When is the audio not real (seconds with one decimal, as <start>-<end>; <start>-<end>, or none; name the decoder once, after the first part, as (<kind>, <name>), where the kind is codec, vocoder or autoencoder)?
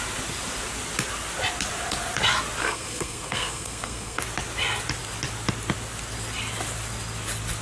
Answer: 2.6-4.2 (codec, SNAC)